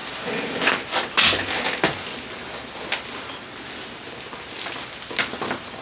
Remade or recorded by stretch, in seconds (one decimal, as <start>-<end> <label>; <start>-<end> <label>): 0.0-5.8 recorded